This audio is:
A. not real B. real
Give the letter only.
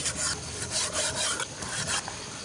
B